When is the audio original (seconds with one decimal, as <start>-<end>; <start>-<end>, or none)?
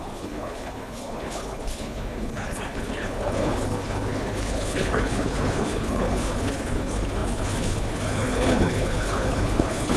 none